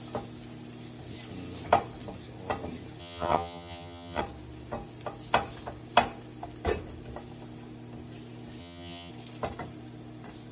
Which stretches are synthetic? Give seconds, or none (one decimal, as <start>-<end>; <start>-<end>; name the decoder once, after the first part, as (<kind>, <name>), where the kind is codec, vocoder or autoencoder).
3.0-4.2 (vocoder, HiFi-GAN); 8.6-9.1